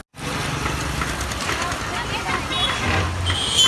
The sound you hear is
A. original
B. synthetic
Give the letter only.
A